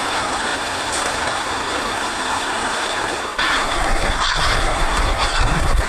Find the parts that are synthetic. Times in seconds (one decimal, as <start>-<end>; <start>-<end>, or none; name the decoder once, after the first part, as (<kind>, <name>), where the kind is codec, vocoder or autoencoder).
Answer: 0.0-5.9 (codec, SNAC)